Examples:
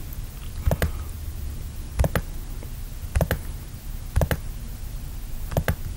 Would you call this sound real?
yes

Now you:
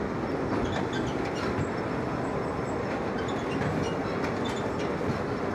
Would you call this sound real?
yes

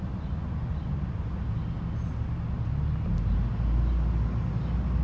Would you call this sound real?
yes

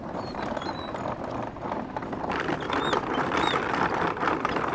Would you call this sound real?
yes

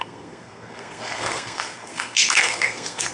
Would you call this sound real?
no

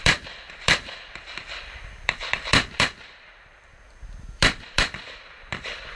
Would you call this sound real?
no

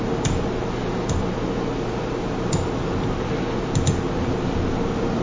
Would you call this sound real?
yes